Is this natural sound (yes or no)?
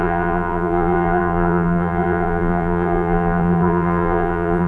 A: no